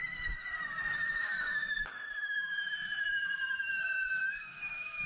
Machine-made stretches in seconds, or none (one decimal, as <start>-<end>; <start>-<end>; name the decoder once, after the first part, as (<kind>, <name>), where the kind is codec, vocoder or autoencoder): 0.9-5.1 (autoencoder, DAC-VAE)